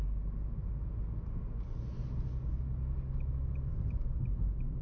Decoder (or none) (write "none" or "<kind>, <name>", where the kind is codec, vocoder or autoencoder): none